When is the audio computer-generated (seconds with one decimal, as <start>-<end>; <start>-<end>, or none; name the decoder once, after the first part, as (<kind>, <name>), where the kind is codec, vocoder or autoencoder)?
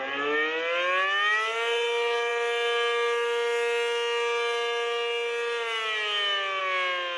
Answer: none